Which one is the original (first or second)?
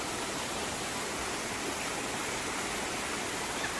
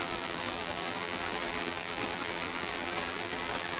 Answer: first